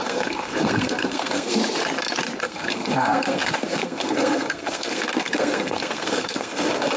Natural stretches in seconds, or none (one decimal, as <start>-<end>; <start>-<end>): 1.6-2.4